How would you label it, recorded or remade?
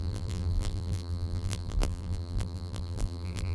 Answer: remade